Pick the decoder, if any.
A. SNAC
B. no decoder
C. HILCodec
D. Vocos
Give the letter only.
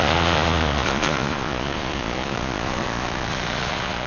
D